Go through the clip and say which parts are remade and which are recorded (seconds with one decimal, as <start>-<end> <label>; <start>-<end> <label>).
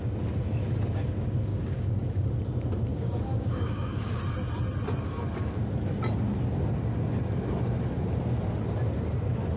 0.0-1.5 recorded; 1.5-2.3 remade; 2.3-2.9 recorded; 2.9-4.2 remade; 4.2-9.6 recorded